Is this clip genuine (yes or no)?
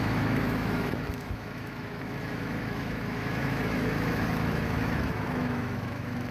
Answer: no